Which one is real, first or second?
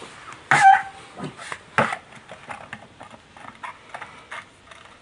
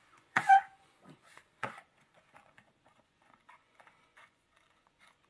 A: first